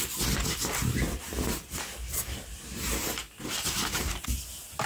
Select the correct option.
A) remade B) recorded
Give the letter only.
B